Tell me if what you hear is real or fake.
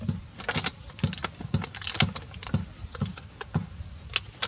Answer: real